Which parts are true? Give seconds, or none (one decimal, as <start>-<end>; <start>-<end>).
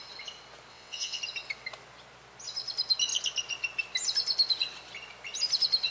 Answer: 0.0-0.7; 1.2-5.9